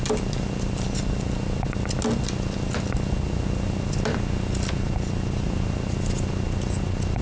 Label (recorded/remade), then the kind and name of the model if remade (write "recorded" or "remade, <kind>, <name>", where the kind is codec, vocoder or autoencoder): recorded